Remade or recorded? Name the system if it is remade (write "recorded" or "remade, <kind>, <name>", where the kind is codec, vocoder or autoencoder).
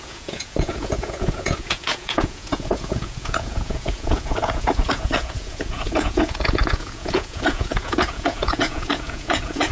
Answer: remade, vocoder, Vocos